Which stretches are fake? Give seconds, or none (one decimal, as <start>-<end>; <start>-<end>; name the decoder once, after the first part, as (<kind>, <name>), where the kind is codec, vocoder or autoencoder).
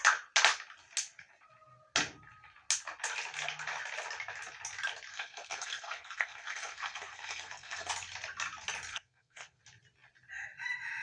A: 5.1-7.9 (codec, SNAC); 8.9-9.6